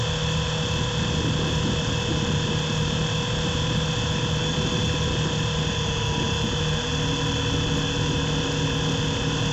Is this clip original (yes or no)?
yes